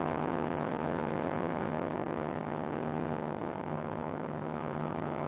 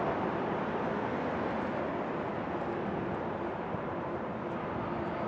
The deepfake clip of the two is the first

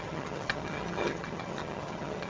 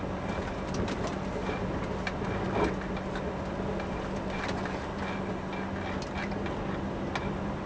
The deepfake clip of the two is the first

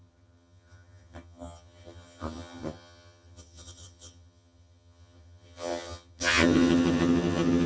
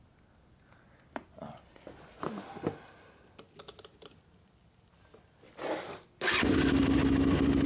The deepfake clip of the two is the first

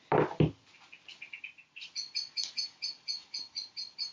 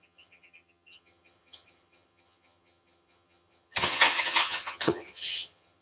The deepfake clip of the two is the second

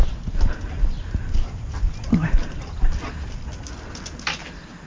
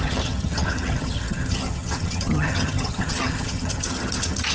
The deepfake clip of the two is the second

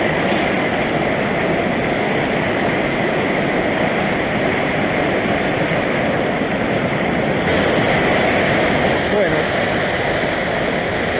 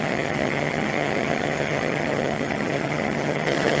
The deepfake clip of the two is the second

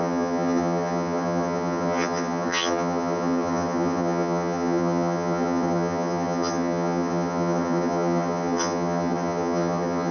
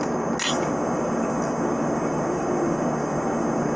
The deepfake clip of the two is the first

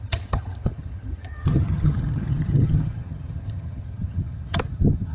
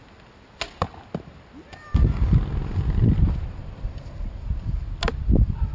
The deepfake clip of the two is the first